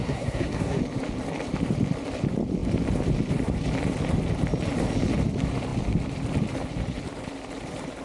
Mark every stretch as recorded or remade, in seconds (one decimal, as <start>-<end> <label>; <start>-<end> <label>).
0.0-0.8 remade; 0.8-8.0 recorded